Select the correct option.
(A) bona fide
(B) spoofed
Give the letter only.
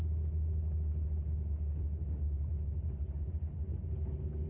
A